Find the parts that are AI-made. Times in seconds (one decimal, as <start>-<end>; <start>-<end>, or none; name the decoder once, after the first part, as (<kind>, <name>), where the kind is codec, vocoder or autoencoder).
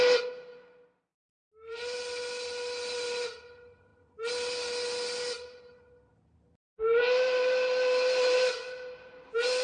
1.1-2.0 (vocoder, BigVGAN v2)